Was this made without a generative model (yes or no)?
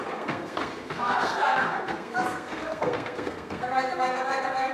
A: no